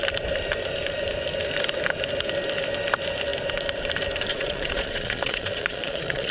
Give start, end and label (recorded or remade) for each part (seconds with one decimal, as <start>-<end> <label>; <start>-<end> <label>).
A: 0.0-4.3 recorded; 4.3-6.3 remade